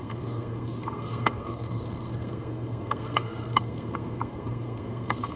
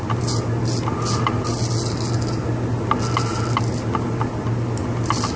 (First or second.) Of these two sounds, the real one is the second